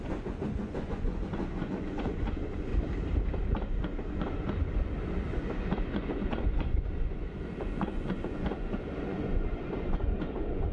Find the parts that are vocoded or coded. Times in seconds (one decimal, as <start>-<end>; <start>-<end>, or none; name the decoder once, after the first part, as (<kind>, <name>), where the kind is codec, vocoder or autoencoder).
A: 0.0-2.7 (vocoder, Vocos); 5.8-10.7